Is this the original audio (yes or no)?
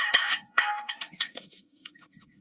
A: no